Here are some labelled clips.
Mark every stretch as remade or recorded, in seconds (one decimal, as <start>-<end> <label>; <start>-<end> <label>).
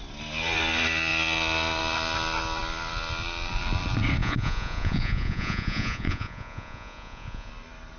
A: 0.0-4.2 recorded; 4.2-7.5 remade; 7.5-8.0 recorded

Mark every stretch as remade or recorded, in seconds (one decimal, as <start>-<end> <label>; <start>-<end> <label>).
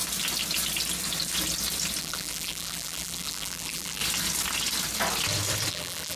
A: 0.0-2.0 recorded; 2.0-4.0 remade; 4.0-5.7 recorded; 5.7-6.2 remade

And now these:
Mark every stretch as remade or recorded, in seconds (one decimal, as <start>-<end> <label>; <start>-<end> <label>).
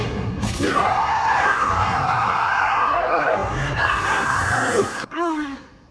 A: 0.0-5.9 remade